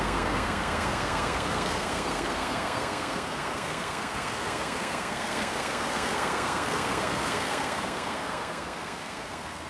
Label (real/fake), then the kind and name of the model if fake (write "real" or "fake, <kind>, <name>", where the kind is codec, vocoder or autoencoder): fake, codec, SNAC